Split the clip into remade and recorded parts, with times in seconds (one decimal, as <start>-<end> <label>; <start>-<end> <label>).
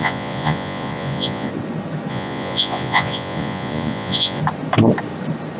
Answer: 0.0-1.5 remade; 1.5-2.1 recorded; 2.1-4.4 remade; 4.4-5.6 recorded